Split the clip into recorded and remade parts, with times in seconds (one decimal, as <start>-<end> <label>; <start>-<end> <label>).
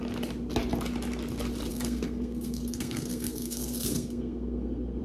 0.0-1.7 recorded; 1.7-5.0 remade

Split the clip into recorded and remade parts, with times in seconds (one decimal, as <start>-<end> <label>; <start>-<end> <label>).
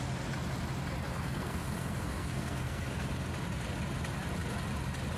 0.0-1.1 recorded; 1.1-3.1 remade; 3.1-5.2 recorded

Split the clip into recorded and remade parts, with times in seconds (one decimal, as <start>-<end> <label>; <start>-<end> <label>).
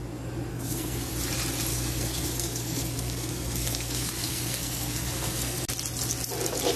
0.0-0.5 recorded; 0.5-1.1 remade; 1.1-1.7 recorded; 1.7-5.6 remade; 5.6-6.8 recorded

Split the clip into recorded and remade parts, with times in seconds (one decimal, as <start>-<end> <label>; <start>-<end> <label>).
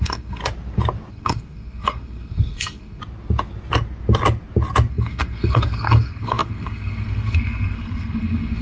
0.0-0.4 remade; 0.4-1.1 recorded; 1.1-3.0 remade; 3.0-4.9 recorded; 4.9-8.6 remade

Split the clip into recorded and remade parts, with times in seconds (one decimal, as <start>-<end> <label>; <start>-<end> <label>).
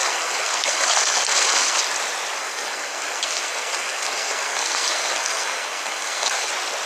0.0-1.8 remade; 1.8-2.4 recorded; 2.4-6.5 remade; 6.5-6.9 recorded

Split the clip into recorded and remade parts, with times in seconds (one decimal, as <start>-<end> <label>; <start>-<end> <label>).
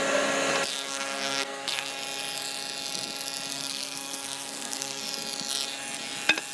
0.0-0.7 recorded; 0.7-1.9 remade; 1.9-3.5 recorded; 3.5-5.0 remade; 5.0-6.5 recorded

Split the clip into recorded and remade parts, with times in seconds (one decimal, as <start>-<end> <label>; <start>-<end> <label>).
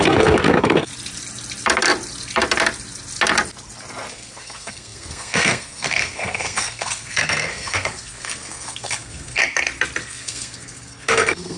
0.0-0.9 remade; 0.9-4.1 recorded; 4.1-9.4 remade; 9.4-10.0 recorded; 10.0-11.6 remade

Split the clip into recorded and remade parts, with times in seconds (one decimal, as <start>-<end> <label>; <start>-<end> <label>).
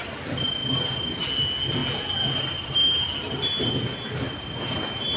0.0-5.2 recorded